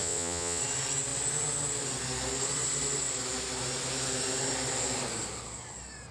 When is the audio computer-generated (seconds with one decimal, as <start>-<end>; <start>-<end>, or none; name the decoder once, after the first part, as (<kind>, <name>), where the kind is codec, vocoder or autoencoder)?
0.0-0.6 (vocoder, Vocos)

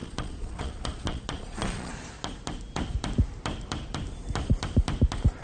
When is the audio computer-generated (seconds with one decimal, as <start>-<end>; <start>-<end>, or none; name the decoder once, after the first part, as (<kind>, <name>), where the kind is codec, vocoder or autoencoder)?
0.0-1.9 (vocoder, Vocos)